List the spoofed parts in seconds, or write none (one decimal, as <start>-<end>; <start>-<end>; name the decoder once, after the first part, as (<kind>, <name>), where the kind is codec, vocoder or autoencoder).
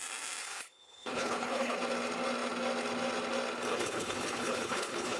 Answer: 0.4-1.8 (codec, HILCodec); 3.7-5.2